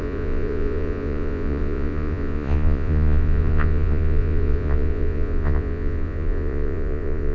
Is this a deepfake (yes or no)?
yes